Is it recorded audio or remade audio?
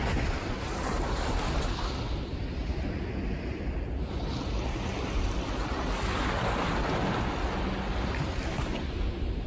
recorded